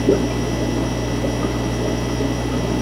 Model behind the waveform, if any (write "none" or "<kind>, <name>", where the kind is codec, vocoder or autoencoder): none